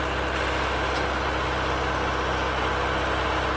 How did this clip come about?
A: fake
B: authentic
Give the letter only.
B